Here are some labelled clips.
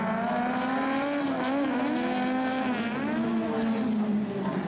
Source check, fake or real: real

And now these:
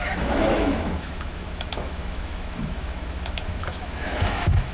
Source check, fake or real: fake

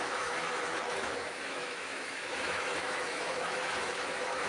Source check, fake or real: fake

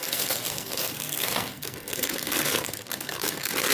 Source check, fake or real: fake